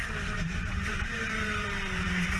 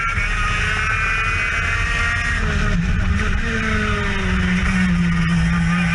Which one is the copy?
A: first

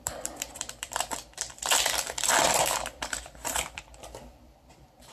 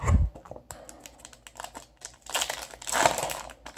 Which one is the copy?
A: first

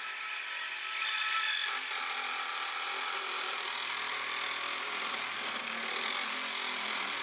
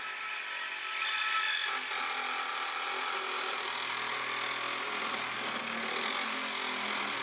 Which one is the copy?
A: first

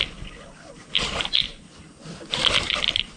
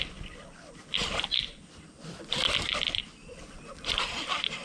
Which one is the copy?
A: second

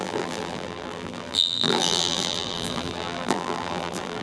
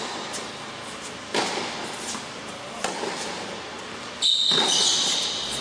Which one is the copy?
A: first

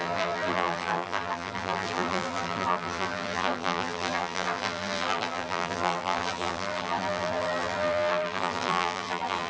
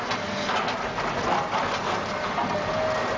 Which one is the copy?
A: first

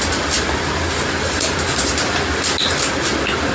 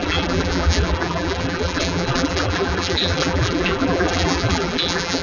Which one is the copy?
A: second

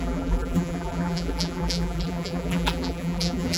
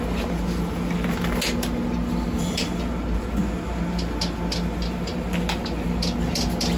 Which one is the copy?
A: first